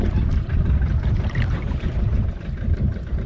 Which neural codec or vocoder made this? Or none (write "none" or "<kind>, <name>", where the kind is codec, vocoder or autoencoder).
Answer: vocoder, BigVGAN v2